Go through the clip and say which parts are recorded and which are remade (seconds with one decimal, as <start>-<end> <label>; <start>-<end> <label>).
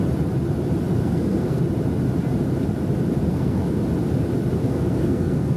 0.0-1.0 recorded; 1.0-1.6 remade; 1.6-3.3 recorded; 3.3-3.8 remade; 3.8-4.6 recorded; 4.6-5.6 remade